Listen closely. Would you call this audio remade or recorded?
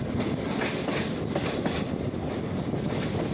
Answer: recorded